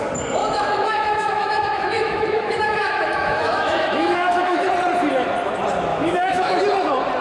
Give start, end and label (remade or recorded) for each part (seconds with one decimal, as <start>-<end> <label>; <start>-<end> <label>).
0.0-0.4 recorded; 0.4-4.7 remade; 4.7-5.9 recorded; 5.9-6.6 remade; 6.6-7.2 recorded